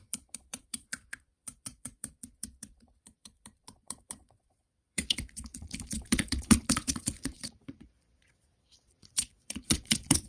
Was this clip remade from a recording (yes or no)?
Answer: yes